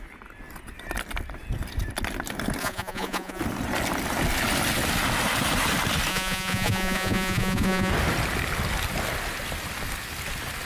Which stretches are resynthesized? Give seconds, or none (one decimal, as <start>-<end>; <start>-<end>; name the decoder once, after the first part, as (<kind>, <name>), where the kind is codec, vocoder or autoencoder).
2.6-3.4 (vocoder, Vocos); 6.1-7.9